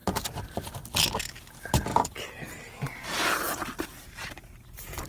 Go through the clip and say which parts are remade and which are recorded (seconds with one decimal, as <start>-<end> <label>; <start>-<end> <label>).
0.0-1.9 recorded; 1.9-5.1 remade